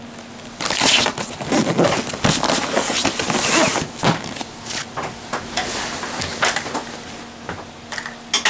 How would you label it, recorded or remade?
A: recorded